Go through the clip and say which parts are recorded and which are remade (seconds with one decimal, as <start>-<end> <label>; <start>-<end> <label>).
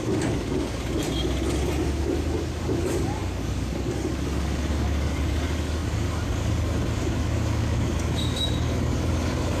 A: 0.0-1.0 remade; 1.0-1.8 recorded; 1.8-9.6 remade